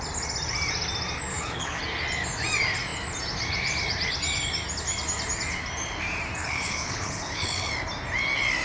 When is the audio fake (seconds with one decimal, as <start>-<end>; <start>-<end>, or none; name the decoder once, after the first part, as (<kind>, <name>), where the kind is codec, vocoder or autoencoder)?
1.3-1.8 (codec, HILCodec); 6.4-7.7